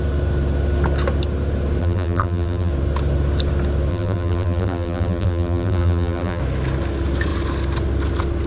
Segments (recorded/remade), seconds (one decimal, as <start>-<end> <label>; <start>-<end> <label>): 0.0-1.8 recorded; 1.8-2.7 remade; 2.7-3.9 recorded; 3.9-6.4 remade; 6.4-8.5 recorded